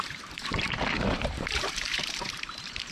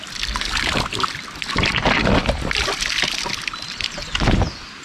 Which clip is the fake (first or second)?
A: first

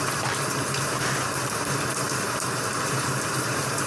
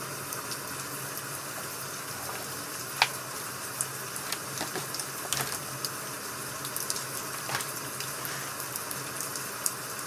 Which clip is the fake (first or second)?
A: first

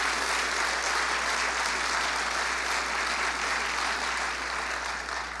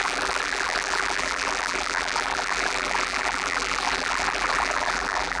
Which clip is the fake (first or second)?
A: second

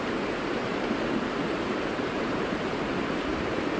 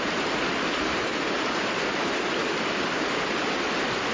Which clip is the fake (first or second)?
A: first